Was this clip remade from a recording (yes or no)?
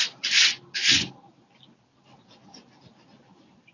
no